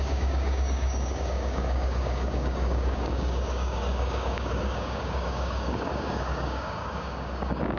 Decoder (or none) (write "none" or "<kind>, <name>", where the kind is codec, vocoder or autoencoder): codec, DAC